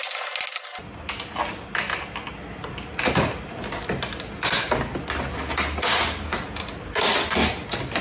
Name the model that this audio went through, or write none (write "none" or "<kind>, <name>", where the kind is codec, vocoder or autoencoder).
none